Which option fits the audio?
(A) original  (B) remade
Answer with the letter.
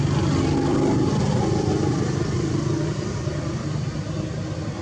A